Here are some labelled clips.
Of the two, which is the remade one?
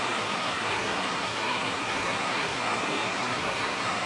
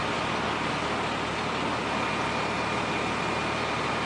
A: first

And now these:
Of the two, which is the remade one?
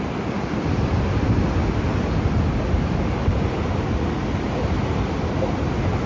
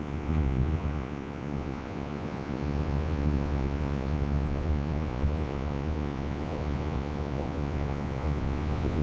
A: second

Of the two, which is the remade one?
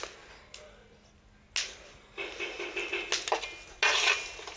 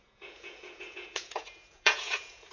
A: second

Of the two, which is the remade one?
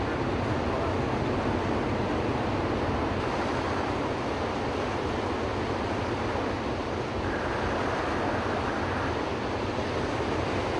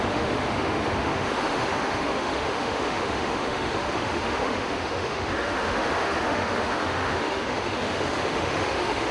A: second